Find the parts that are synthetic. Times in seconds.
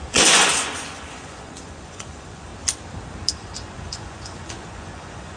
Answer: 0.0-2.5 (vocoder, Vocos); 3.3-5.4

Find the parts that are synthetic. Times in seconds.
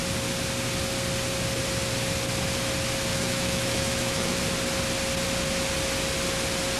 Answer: 3.1-4.4 (autoencoder, DAC-VAE)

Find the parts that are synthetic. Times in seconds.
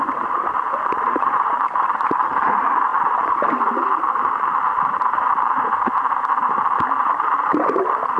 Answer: 0.0-8.2 (vocoder, BigVGAN v2)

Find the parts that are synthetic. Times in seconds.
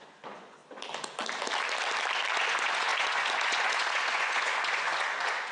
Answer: 0.0-0.6 (vocoder, Vocos); 2.4-5.5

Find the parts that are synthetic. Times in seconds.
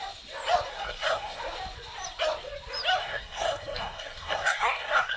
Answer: 0.7-1.4 (codec, SNAC); 3.0-5.2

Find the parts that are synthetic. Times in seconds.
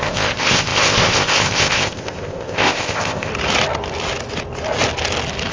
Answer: 0.0-3.3 (codec, ZipCodec)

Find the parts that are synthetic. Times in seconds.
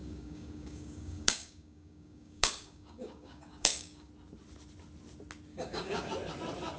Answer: 0.0-4.1 (codec, DAC); 5.5-6.1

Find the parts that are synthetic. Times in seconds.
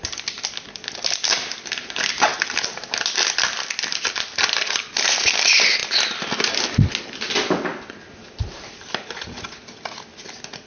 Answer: none